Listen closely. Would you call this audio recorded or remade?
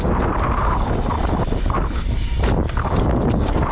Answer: recorded